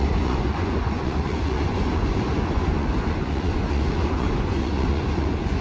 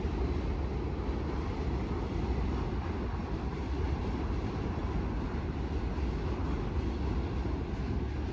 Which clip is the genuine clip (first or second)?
second